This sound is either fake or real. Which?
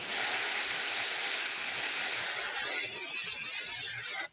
real